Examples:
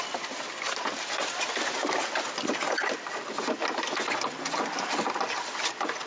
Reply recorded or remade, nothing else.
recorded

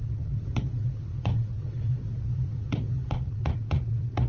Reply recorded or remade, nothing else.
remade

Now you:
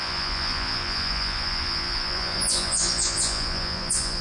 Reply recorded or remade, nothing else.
remade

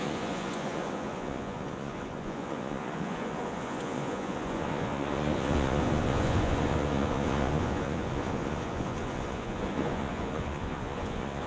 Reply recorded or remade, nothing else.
remade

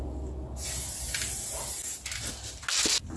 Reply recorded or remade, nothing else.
recorded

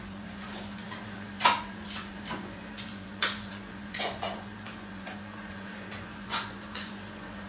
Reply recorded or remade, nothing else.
remade